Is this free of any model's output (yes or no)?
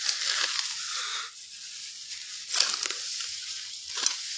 yes